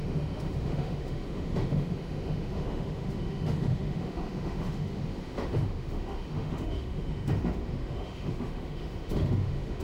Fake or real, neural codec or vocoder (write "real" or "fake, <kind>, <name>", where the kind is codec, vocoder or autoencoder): fake, autoencoder, DAC-VAE